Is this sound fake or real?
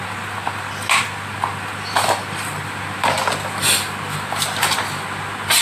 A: real